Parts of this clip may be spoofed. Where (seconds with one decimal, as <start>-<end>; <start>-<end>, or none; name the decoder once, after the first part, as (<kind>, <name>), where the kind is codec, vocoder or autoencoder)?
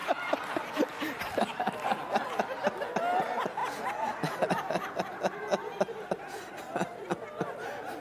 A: 0.0-1.4 (vocoder, BigVGAN v2); 3.6-5.0